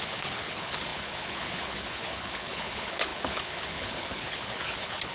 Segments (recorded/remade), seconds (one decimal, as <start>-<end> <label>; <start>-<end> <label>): 0.0-5.1 remade